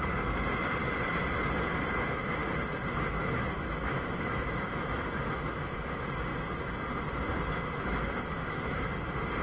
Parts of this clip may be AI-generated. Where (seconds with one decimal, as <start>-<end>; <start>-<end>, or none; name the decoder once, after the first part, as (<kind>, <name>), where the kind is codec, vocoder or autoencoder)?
0.0-0.8 (autoencoder, DAC-VAE); 1.9-2.4; 2.9-6.3; 7.5-9.4